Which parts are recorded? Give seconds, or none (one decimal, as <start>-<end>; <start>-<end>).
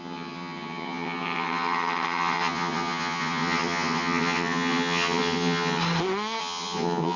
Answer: 5.8-6.4